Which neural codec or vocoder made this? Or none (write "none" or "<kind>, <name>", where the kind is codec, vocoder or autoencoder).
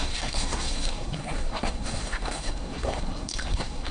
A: codec, SNAC